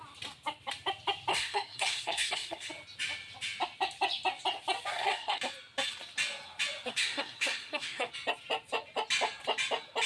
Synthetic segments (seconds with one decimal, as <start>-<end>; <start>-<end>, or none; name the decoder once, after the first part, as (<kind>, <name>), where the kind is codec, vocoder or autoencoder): 1.3-2.7 (codec, SNAC); 4.9-5.4; 6.9-8.1